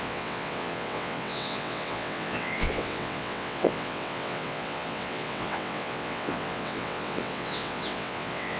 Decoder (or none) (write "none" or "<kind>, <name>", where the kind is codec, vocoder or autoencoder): vocoder, WaveNeXt